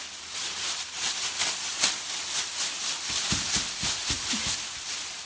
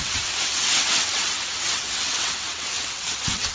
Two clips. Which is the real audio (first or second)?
first